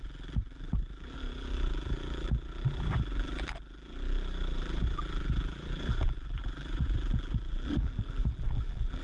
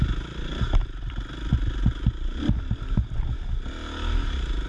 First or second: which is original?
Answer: second